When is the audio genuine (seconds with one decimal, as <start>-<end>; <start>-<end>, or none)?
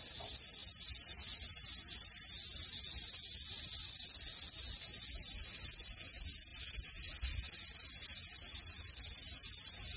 0.0-10.0